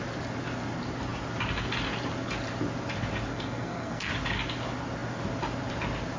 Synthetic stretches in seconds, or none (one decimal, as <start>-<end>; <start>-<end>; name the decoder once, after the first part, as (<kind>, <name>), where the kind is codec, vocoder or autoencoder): 3.3-4.1 (codec, SNAC)